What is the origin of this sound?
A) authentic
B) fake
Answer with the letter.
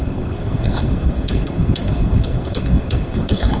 B